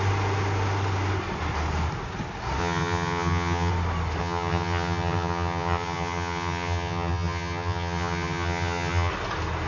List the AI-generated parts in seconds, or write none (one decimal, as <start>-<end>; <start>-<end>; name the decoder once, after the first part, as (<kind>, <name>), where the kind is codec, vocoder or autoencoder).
2.6-3.7 (vocoder, HiFi-GAN); 4.2-9.1